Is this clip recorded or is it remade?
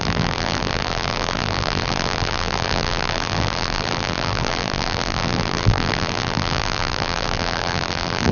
remade